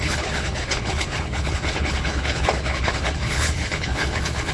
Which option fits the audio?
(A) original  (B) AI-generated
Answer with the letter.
B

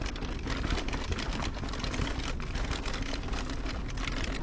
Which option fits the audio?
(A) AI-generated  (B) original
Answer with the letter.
B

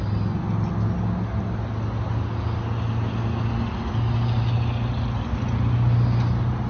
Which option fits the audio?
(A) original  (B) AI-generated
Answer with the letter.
A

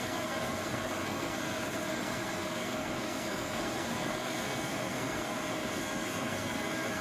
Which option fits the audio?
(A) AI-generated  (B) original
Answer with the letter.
A